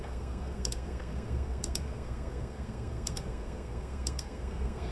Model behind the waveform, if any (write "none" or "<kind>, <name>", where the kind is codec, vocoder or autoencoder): codec, SNAC